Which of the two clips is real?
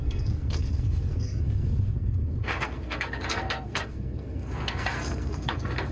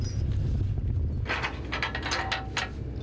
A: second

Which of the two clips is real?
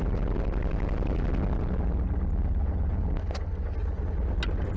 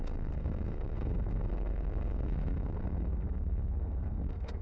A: first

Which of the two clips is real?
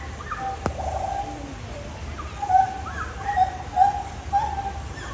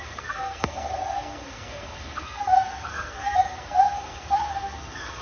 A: first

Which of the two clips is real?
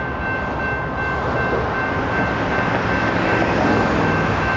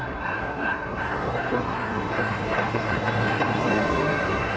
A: first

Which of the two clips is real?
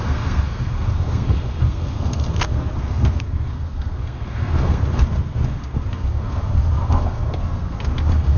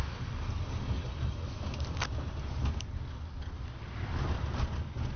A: second